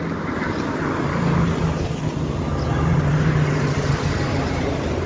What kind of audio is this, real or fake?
real